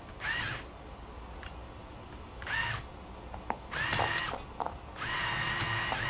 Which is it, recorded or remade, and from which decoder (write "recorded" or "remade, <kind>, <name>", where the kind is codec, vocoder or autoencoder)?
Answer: recorded